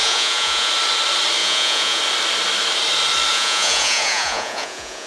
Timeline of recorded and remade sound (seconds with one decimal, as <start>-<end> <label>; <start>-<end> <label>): 0.0-0.7 remade; 0.7-1.4 recorded; 1.4-2.0 remade; 2.0-3.3 recorded; 3.3-5.1 remade